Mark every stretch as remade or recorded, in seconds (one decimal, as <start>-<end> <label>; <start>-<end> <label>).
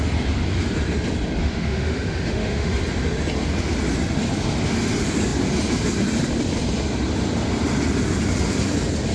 0.0-1.4 recorded; 1.4-2.7 remade; 2.7-9.1 recorded